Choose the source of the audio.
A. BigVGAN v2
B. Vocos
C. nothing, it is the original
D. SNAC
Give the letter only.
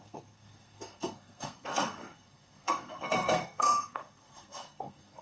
D